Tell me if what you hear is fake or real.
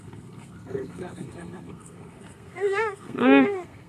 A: fake